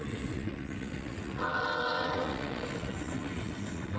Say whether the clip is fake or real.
fake